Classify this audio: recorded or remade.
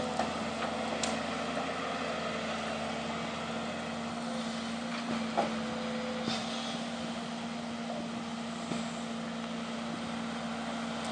recorded